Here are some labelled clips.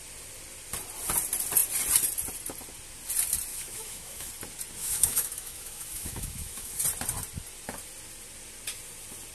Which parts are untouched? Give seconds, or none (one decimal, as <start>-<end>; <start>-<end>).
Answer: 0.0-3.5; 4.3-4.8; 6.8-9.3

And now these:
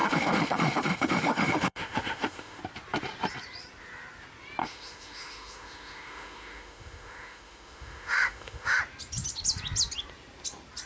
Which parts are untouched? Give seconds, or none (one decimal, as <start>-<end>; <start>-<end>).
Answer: 2.6-4.6; 8.8-10.9

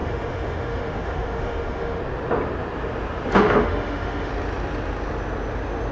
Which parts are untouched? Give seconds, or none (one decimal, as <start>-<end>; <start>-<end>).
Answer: 2.0-3.3; 4.3-5.9

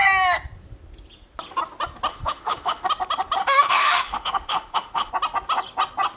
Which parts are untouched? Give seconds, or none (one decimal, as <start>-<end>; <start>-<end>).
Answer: 0.0-2.1; 2.9-3.4; 5.1-6.2

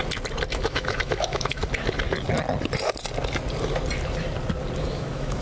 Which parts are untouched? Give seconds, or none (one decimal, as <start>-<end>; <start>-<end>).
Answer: 0.0-0.5; 1.6-4.8